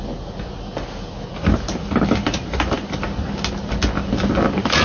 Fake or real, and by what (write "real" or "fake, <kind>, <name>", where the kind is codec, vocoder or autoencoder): real